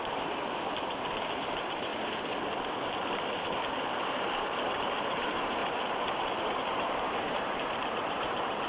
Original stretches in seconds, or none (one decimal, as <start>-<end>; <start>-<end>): 1.9-4.7